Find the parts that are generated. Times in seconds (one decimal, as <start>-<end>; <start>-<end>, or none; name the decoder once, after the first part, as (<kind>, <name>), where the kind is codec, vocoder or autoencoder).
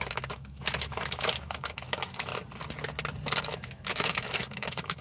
0.0-2.3 (autoencoder, DAC-VAE); 3.4-5.0